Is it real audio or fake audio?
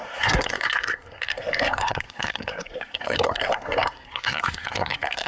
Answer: fake